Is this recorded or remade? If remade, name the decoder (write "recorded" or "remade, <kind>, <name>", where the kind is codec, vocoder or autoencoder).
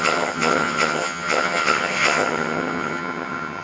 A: remade, vocoder, HiFi-GAN